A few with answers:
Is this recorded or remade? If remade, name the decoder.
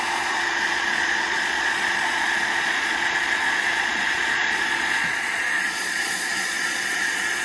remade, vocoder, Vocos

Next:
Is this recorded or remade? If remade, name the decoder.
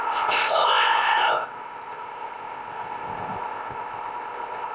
remade, codec, ZipCodec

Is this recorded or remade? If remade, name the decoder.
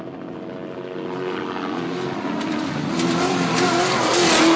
recorded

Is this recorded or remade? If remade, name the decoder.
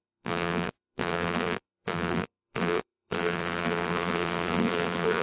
remade, vocoder, BigVGAN v2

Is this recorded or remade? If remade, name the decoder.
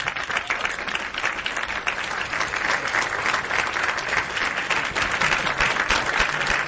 recorded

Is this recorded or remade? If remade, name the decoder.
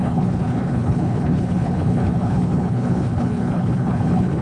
remade, codec, HILCodec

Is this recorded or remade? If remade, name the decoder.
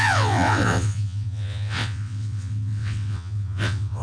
remade, vocoder, WaveNeXt